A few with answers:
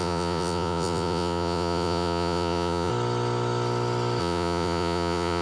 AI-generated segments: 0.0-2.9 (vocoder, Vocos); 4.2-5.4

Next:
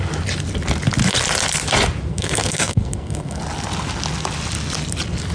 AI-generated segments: 2.1-3.4 (codec, SNAC)